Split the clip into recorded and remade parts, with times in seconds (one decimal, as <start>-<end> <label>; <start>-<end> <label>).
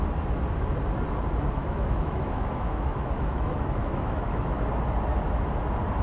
0.0-1.6 recorded; 1.6-4.6 remade; 4.6-6.0 recorded